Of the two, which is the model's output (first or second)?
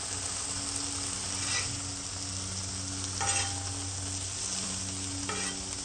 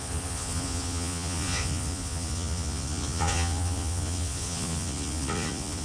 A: second